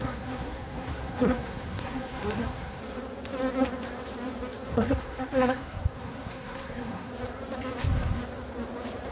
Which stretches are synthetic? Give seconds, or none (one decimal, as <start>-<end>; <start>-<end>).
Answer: 0.0-2.8; 4.7-7.1; 7.8-8.2